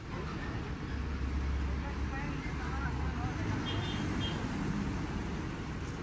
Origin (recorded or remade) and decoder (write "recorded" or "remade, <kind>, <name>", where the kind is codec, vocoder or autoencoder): recorded